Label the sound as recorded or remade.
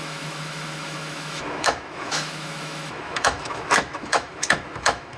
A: remade